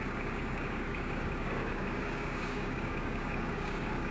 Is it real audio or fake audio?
fake